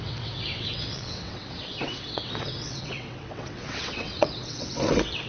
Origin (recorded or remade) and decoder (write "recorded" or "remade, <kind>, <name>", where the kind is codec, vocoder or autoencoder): remade, vocoder, WaveNeXt